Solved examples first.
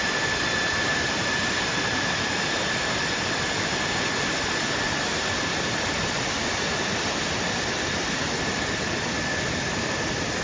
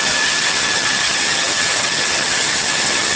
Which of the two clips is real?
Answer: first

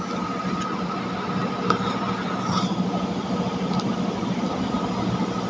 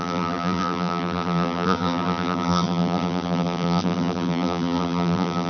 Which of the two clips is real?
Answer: first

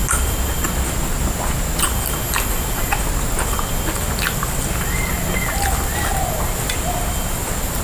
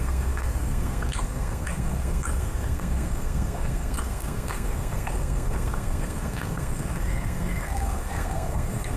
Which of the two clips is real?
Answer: first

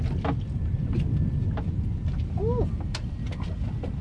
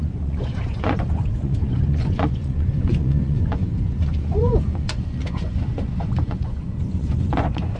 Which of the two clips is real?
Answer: first